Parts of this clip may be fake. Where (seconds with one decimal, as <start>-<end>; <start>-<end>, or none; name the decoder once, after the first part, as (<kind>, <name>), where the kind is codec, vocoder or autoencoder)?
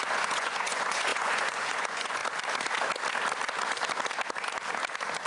0.0-2.2 (vocoder, Vocos)